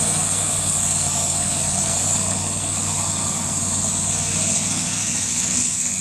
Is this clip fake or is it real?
fake